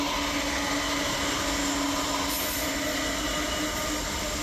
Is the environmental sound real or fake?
real